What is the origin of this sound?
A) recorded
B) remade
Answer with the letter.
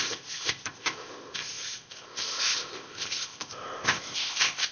B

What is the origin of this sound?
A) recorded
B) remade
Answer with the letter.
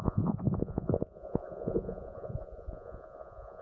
B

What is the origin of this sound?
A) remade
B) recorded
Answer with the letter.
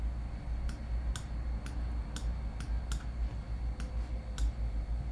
B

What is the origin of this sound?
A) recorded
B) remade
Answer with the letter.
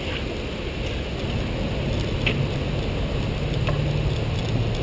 A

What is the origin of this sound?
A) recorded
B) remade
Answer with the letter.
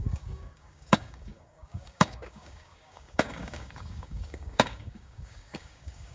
B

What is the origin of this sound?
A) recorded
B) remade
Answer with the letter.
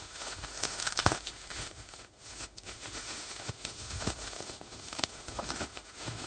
B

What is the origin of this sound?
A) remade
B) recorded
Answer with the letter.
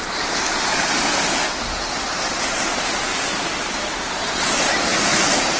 B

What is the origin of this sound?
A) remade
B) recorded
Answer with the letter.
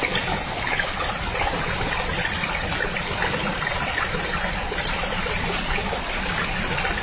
B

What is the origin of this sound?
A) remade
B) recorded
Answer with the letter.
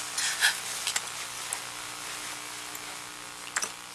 B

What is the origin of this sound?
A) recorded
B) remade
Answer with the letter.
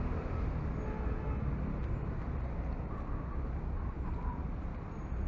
A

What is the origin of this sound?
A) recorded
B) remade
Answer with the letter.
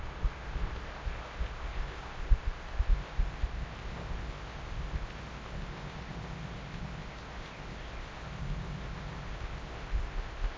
B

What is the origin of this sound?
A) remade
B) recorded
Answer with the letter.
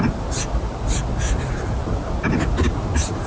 B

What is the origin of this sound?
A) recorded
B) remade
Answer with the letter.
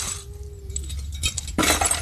A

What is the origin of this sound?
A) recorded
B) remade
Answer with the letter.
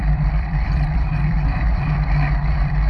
B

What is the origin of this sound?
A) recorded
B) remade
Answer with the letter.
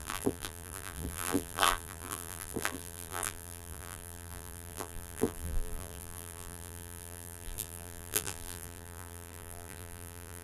B